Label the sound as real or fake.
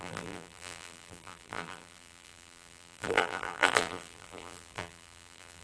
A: fake